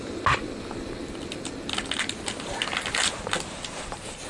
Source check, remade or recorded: recorded